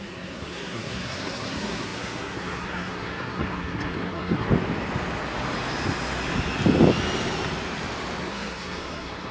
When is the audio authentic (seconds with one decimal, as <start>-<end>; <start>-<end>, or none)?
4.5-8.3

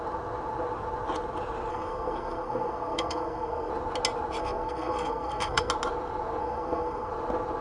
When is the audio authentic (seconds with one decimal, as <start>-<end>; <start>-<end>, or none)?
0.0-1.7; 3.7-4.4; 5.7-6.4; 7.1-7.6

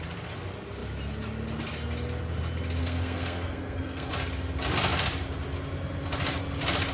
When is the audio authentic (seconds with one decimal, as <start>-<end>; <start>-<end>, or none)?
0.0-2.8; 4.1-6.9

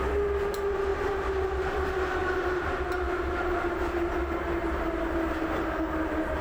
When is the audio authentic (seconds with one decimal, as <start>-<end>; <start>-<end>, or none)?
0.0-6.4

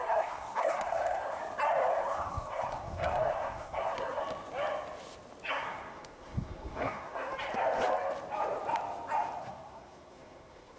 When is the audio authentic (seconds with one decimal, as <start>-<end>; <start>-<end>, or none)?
1.4-1.9; 4.2-5.5; 7.3-9.4

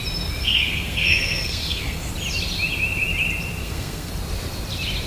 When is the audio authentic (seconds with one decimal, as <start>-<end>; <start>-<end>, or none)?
0.0-0.4; 2.1-3.6; 4.1-5.1